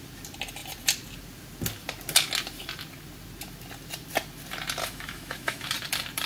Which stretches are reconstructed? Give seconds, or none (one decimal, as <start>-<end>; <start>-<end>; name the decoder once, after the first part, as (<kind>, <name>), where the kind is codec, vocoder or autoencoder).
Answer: 4.8-5.7 (autoencoder, DAC-VAE)